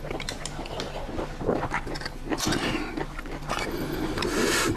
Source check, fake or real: real